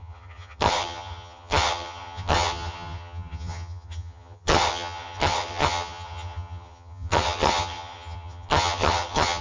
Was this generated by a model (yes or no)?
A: yes